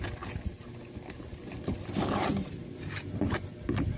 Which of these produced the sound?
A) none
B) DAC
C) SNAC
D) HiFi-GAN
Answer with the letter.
A